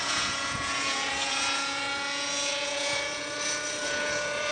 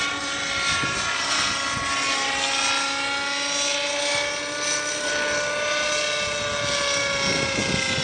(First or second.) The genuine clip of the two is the second